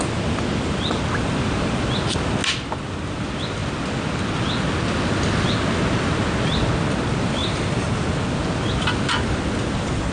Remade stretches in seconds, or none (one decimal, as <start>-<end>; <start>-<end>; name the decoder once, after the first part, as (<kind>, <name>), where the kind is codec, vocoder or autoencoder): none